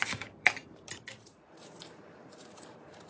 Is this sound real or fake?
fake